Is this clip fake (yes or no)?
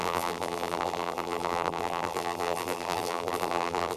yes